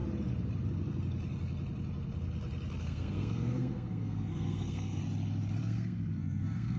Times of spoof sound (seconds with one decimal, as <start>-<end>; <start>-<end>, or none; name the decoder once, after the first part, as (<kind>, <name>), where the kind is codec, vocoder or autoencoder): 2.8-5.0 (codec, SNAC); 5.6-6.8